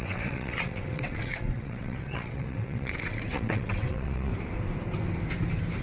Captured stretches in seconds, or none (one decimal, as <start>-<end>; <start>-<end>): 4.3-5.8